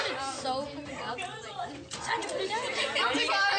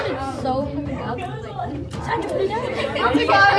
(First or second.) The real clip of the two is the first